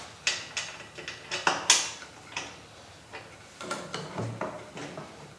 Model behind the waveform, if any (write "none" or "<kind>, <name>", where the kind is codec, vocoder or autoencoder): none